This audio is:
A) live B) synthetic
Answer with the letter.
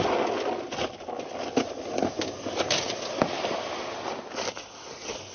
A